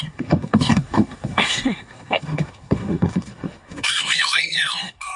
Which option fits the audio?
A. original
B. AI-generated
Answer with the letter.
B